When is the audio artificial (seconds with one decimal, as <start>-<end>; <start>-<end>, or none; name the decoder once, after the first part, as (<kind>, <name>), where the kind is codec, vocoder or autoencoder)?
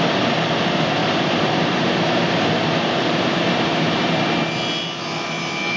1.0-4.5 (vocoder, BigVGAN v2)